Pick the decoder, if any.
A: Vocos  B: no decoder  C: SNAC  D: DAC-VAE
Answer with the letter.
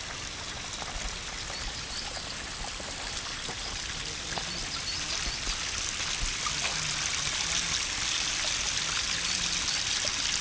B